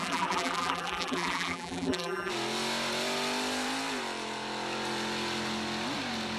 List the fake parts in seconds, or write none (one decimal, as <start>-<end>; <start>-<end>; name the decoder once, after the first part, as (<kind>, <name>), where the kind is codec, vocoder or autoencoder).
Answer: 0.0-2.3 (vocoder, BigVGAN v2)